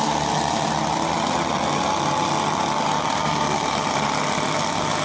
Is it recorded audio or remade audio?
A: recorded